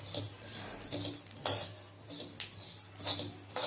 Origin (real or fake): real